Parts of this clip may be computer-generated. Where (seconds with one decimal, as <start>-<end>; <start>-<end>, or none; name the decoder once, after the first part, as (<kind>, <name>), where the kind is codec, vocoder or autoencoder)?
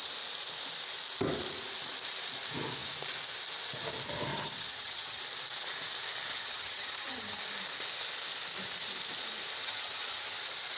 4.3-5.2 (vocoder, HiFi-GAN); 6.3-7.4; 9.6-10.4